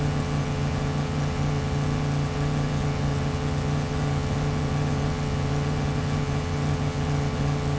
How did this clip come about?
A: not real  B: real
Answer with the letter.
A